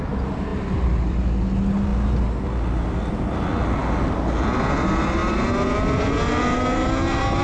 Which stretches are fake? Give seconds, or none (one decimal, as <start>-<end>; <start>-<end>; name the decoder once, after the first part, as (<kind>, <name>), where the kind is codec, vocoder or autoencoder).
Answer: none